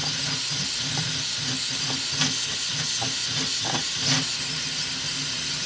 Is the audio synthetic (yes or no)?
no